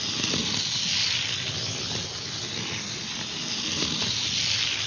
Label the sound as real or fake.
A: real